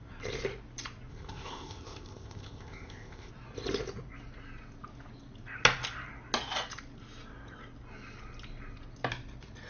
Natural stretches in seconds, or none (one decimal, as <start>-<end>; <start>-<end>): 0.0-1.1; 3.3-9.7

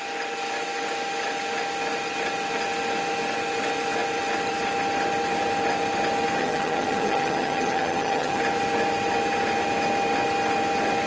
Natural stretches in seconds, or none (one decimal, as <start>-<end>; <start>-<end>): 0.0-6.4; 8.4-11.1